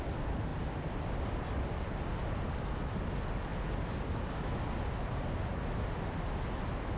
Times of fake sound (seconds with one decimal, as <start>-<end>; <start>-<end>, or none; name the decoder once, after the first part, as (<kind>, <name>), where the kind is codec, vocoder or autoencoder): 0.5-2.2 (vocoder, BigVGAN v2)